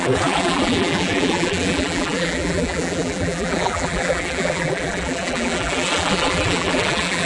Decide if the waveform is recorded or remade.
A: remade